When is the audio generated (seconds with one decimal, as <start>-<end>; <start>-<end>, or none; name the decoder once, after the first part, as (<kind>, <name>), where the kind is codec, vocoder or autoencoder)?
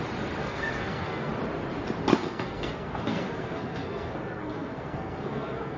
0.4-1.3 (codec, SNAC); 2.1-5.8